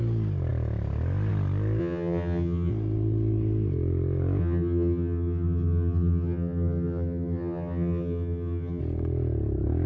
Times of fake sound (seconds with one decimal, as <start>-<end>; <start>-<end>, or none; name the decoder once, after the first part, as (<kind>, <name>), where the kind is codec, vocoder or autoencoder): 1.8-2.7 (vocoder, HiFi-GAN); 4.4-8.8